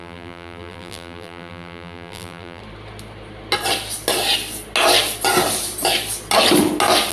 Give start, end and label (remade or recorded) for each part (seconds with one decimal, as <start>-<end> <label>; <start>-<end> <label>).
0.0-2.6 remade; 2.6-7.1 recorded